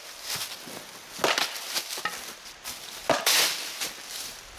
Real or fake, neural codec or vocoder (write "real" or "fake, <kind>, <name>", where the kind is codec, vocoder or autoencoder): real